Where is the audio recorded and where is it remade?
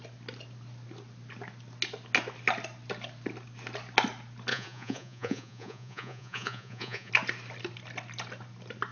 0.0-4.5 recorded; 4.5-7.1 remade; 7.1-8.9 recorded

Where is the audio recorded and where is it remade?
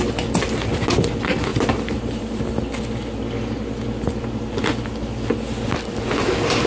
0.0-1.5 recorded; 1.5-2.4 remade; 2.4-6.7 recorded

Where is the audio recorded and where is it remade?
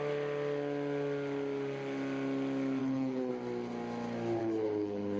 0.0-2.8 recorded; 2.8-3.3 remade; 3.3-4.4 recorded; 4.4-5.2 remade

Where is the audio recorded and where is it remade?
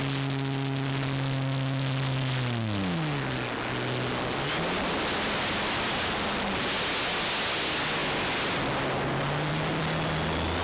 0.0-10.6 recorded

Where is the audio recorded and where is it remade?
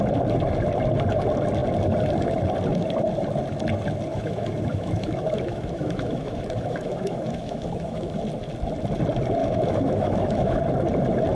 0.0-4.1 recorded; 4.1-8.2 remade; 8.2-9.4 recorded; 9.4-10.6 remade; 10.6-11.4 recorded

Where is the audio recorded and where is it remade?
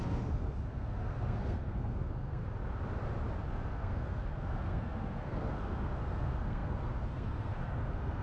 0.0-2.4 remade; 2.4-3.5 recorded; 3.5-8.2 remade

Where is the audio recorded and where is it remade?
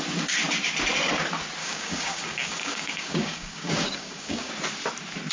0.0-1.6 recorded; 1.6-4.5 remade; 4.5-5.3 recorded